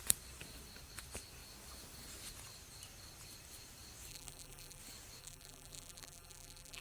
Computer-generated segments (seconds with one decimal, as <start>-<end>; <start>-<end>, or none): 4.1-4.8; 5.2-6.8